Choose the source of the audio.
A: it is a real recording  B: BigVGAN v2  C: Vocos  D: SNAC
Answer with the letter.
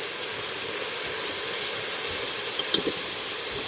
A